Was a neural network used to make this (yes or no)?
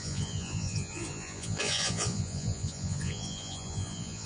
yes